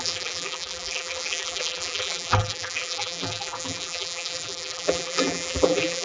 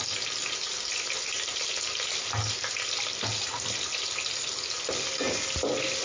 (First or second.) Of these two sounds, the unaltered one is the second